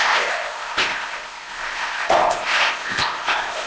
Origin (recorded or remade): remade